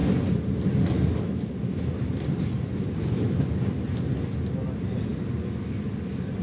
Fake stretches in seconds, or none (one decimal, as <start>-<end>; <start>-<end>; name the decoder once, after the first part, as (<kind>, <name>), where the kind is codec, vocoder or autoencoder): none